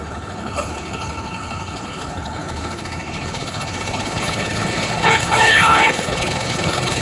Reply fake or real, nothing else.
fake